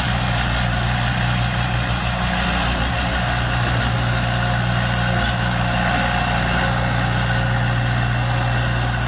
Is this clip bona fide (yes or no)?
yes